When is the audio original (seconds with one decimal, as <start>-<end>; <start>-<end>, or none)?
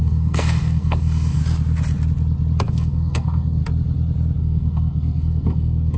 1.4-2.7; 3.6-4.4